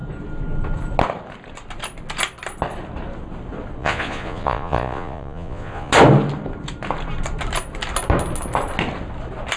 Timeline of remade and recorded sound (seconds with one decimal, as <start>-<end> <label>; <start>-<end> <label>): 0.0-3.8 recorded; 3.8-5.9 remade; 5.9-9.6 recorded